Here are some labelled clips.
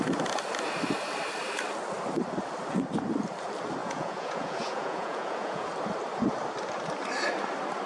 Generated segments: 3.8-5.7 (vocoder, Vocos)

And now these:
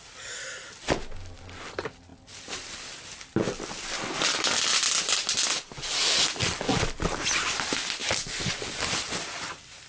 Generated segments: none

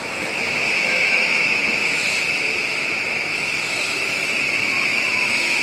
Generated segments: 0.0-5.6 (autoencoder, DAC-VAE)

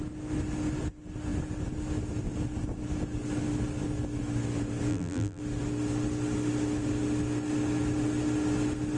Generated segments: 4.9-5.4 (vocoder, BigVGAN v2)

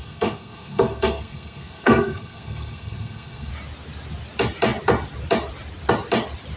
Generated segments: 0.0-3.5 (codec, SNAC)

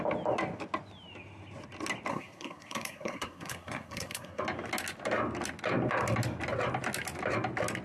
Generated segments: 2.1-4.4 (codec, SNAC)